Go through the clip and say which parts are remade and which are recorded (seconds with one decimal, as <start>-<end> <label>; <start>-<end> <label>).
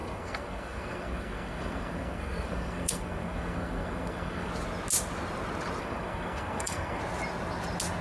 0.0-4.5 remade; 4.5-5.8 recorded; 5.8-7.0 remade; 7.0-8.0 recorded